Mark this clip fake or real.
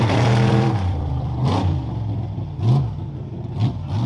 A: fake